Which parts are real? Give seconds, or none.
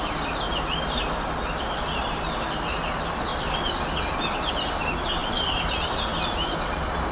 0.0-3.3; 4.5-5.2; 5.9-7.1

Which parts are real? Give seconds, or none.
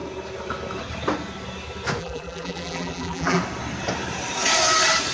0.0-2.0; 3.4-5.1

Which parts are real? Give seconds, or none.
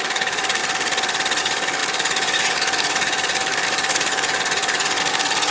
0.6-1.4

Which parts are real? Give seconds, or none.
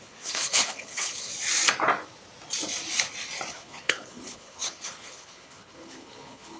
1.3-3.5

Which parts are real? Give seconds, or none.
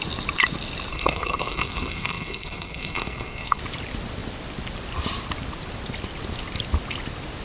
0.0-0.9; 3.6-7.4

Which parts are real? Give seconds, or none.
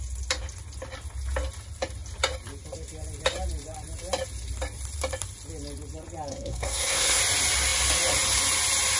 0.0-6.3; 7.2-9.0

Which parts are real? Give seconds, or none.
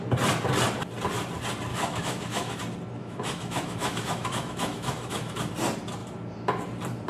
0.0-1.7; 2.6-3.0; 5.5-7.1